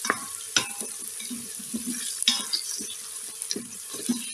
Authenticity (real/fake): real